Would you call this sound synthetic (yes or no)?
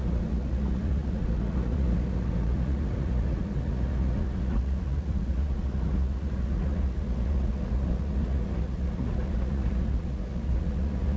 yes